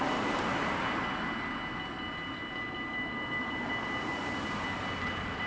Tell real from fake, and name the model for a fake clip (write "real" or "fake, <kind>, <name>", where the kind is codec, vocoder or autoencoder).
real